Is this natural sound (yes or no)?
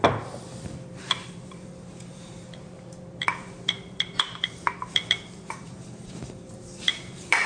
no